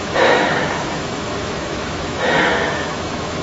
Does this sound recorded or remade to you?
remade